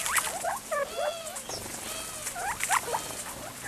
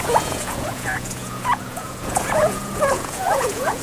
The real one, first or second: first